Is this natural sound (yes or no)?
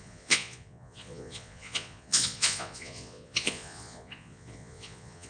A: no